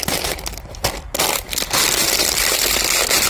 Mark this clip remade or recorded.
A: recorded